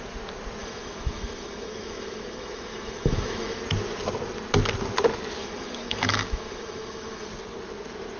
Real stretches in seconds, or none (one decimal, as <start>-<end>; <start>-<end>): 0.0-0.6; 3.6-5.4; 7.3-8.2